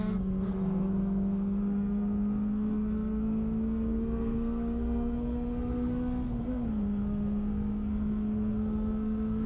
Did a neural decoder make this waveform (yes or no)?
yes